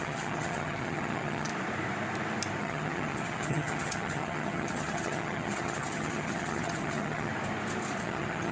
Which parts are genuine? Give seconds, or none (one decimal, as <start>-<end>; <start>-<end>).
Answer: 1.5-2.6; 7.3-8.0